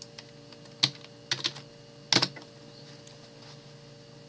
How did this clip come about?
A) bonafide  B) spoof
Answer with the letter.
A